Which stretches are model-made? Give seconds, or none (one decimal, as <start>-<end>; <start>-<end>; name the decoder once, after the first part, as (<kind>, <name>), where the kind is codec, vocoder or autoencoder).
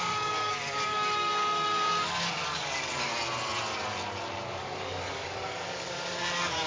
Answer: 0.0-3.1 (codec, DAC); 4.6-6.7